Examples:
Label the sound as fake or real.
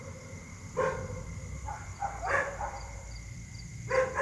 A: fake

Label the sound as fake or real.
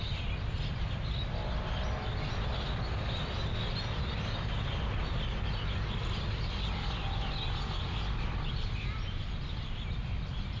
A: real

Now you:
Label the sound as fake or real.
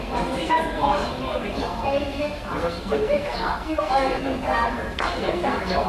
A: fake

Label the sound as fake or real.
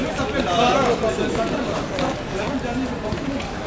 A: real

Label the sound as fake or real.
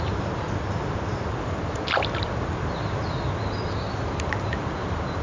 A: real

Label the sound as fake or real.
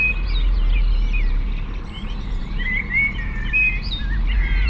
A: fake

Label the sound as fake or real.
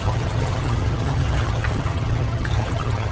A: fake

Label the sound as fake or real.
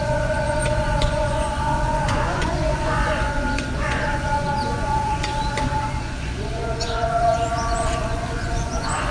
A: fake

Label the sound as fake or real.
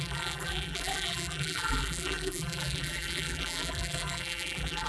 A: fake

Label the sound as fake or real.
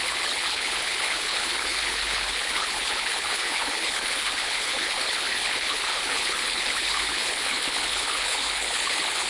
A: fake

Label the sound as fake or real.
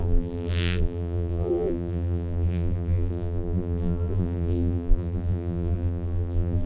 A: fake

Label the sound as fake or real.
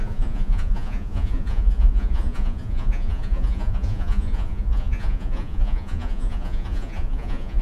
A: fake